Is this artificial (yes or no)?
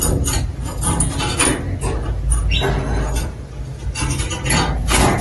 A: no